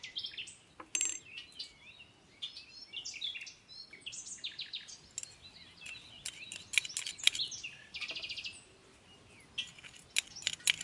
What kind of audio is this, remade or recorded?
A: recorded